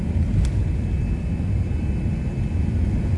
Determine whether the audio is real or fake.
real